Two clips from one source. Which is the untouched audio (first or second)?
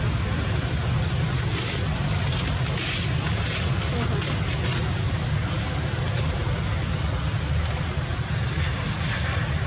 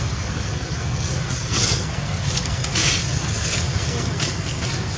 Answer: first